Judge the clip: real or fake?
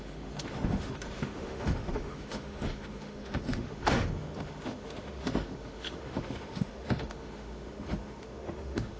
fake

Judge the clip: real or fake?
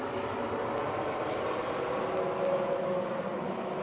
real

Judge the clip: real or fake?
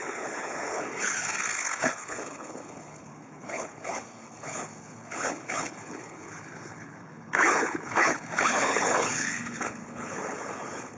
fake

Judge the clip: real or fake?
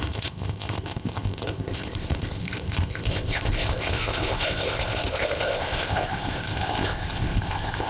fake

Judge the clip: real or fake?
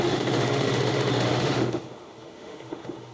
fake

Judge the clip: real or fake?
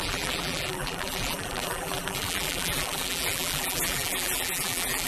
fake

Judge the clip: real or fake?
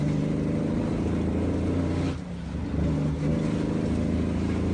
real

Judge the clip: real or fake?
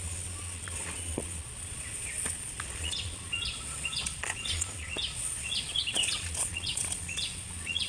fake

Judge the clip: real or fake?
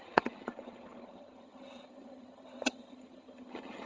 fake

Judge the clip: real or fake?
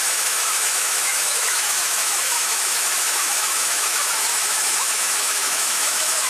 fake